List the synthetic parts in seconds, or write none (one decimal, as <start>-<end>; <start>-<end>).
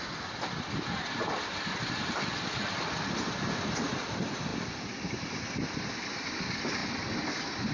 none